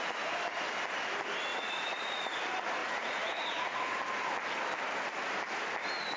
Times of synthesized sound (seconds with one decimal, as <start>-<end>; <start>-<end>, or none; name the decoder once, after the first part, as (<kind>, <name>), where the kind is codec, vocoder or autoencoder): 1.5-2.4 (vocoder, Vocos); 2.8-4.0